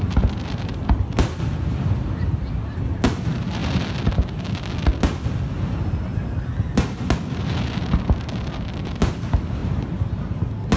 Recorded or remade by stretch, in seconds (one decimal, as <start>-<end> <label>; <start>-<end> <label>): 0.0-9.6 recorded; 9.6-10.2 remade; 10.2-10.8 recorded